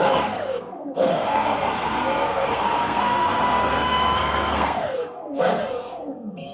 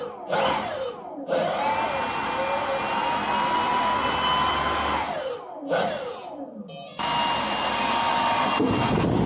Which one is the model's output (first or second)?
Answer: first